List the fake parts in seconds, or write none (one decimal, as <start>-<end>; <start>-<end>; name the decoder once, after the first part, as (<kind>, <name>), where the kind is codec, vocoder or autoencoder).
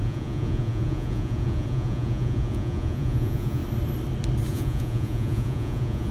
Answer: 0.0-3.6 (vocoder, Vocos); 4.5-6.1